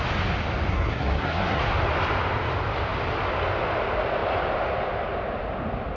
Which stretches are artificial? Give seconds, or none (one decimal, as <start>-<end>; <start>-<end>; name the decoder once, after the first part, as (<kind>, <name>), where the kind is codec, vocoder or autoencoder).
0.7-1.6 (codec, SNAC)